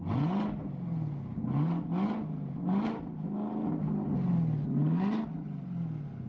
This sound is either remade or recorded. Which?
recorded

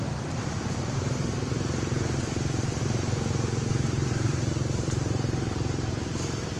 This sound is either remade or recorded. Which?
remade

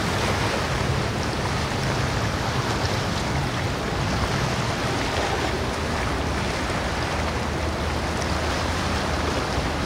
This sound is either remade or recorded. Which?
recorded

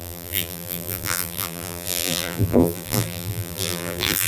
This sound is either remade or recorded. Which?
remade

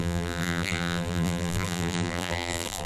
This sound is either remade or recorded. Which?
remade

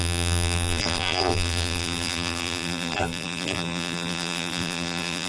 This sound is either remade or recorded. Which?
remade